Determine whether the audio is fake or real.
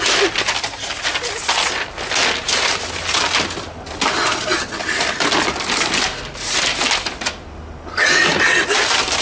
real